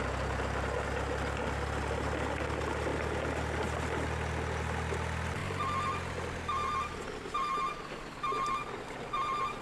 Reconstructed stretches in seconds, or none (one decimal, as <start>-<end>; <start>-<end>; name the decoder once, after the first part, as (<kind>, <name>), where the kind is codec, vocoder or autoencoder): 5.4-7.0 (vocoder, BigVGAN v2); 8.6-9.6